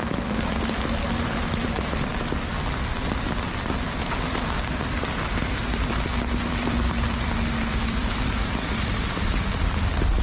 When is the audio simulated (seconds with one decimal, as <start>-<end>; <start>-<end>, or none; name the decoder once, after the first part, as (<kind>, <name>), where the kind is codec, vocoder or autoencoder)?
0.0-2.1 (vocoder, BigVGAN v2); 5.1-10.2